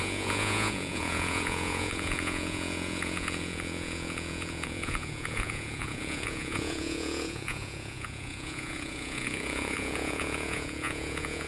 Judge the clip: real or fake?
fake